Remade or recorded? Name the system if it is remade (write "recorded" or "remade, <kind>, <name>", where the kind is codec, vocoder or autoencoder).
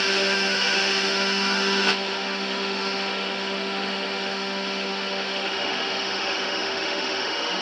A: remade, autoencoder, DAC-VAE